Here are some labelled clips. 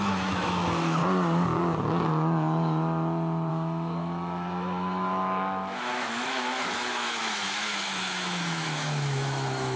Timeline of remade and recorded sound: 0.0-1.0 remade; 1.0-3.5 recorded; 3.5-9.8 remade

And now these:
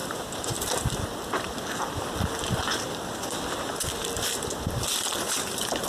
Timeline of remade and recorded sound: 0.0-1.0 remade; 1.0-5.9 recorded

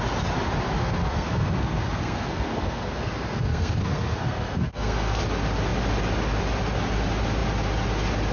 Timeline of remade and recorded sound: 0.0-0.8 recorded; 0.8-5.2 remade; 5.2-8.3 recorded

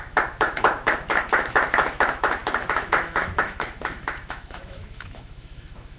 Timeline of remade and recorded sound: 0.0-6.0 remade

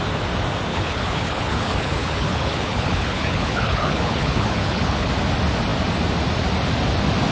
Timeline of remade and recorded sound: 0.0-0.7 recorded; 0.7-5.1 remade; 5.1-7.3 recorded

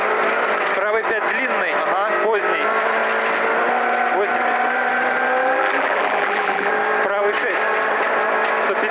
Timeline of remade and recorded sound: 0.0-5.4 recorded; 5.4-6.7 remade; 6.7-8.9 recorded

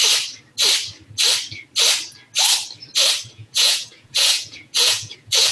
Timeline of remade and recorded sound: 0.0-3.3 recorded; 3.3-5.5 remade